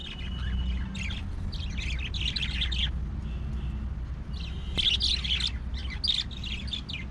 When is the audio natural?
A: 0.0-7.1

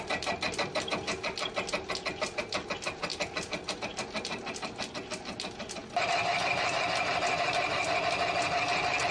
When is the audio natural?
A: 0.0-9.1

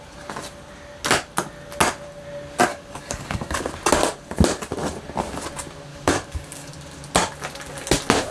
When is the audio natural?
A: 0.0-2.7; 3.6-5.9; 6.7-8.3

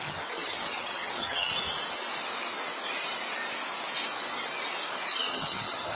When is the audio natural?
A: 1.5-5.1

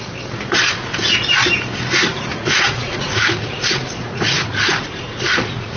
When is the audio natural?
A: 0.0-2.0

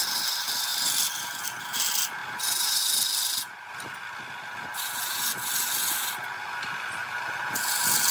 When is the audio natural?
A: 0.0-8.1

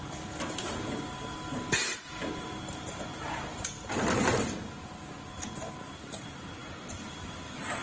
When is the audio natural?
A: 0.0-7.8

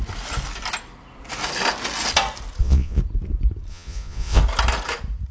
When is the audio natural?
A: 0.0-2.6; 3.0-3.7; 4.4-5.3